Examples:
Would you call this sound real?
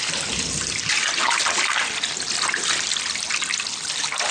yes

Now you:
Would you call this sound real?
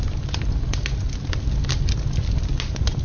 yes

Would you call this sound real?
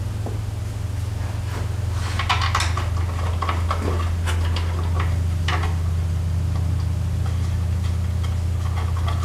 yes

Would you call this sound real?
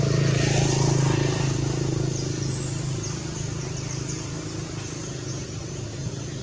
yes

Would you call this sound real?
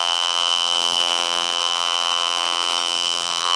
no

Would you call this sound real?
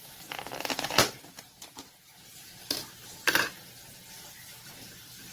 yes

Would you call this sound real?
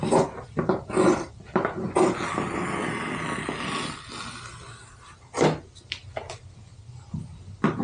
yes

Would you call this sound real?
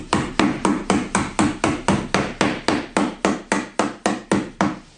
yes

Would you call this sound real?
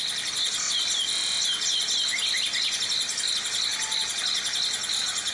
yes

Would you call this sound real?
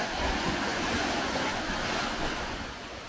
no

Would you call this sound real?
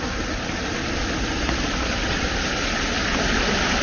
yes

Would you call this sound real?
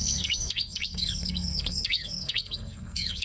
no